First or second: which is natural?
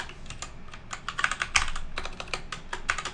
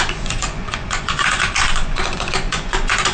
first